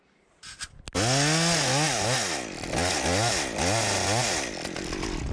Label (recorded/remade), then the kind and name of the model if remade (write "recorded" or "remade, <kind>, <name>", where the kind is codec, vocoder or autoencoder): recorded